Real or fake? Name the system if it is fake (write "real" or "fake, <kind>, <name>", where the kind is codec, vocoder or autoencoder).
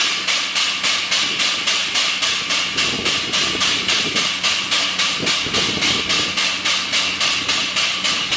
real